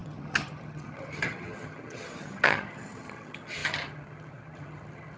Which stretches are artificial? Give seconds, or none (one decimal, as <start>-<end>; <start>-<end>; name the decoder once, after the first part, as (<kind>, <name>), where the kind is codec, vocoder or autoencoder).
0.0-5.2 (vocoder, HiFi-GAN)